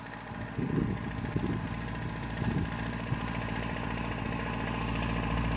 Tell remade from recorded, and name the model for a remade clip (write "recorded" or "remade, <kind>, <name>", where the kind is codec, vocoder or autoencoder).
recorded